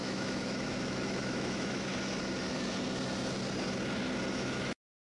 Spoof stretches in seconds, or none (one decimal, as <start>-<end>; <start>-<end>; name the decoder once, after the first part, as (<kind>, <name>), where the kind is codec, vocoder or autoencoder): 0.0-1.9 (autoencoder, DAC-VAE); 4.3-5.0